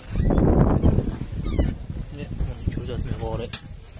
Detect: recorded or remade recorded